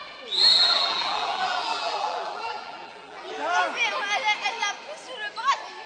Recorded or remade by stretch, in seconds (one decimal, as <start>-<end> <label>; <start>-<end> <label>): 0.0-0.5 recorded; 0.5-3.3 remade; 3.3-5.9 recorded